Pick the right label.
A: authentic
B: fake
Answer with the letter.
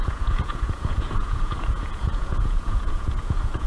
B